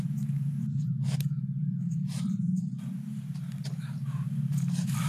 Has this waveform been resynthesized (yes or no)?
yes